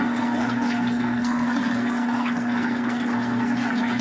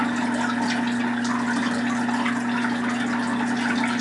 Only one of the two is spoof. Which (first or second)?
first